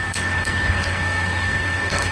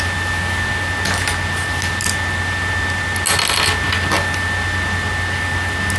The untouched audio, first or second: second